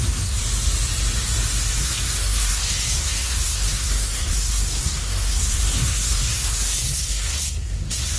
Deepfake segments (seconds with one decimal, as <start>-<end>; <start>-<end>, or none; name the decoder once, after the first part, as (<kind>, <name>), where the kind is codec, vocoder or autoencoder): 0.0-0.4 (codec, SNAC); 1.8-8.2